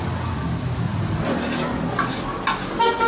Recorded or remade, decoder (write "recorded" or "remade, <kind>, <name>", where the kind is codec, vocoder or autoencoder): recorded